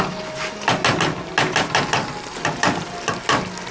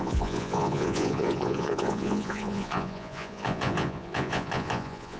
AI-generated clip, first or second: second